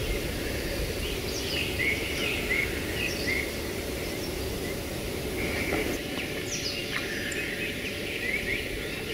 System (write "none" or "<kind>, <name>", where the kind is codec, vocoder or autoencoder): none